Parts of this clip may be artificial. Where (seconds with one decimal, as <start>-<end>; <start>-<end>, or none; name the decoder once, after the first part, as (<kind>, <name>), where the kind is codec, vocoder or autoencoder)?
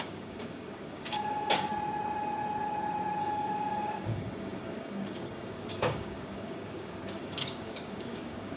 0.0-1.7 (codec, DAC); 3.2-8.6